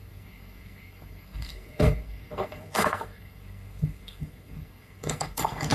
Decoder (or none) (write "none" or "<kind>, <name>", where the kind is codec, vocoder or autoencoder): codec, SNAC